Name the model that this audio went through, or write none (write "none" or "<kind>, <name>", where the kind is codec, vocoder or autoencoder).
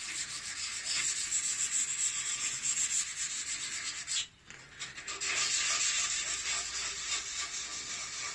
none